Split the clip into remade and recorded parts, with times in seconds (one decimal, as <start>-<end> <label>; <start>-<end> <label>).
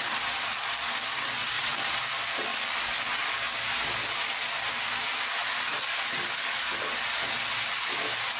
0.0-1.4 recorded; 1.4-1.9 remade; 1.9-5.4 recorded; 5.4-6.5 remade; 6.5-8.4 recorded